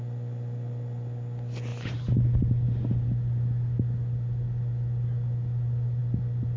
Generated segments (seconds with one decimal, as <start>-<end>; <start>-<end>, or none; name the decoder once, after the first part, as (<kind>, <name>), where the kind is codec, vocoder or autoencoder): none